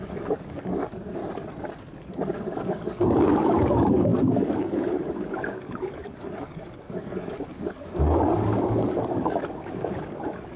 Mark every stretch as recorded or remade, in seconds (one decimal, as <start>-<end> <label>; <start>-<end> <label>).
0.0-1.2 remade; 1.2-2.0 recorded; 2.0-10.6 remade